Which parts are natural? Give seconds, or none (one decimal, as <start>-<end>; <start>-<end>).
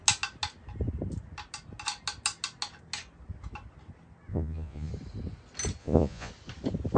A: 0.0-4.3; 4.9-5.8; 6.3-7.0